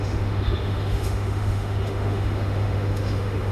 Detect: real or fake fake